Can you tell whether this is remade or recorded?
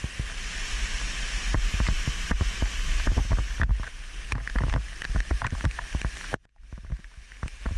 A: recorded